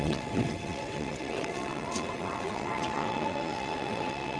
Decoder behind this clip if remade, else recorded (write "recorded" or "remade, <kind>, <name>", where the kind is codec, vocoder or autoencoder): remade, vocoder, WaveNeXt